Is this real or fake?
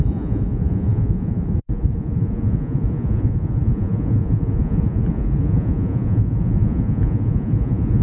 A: fake